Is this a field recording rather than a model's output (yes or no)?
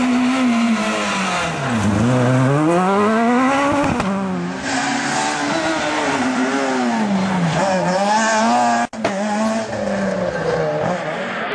yes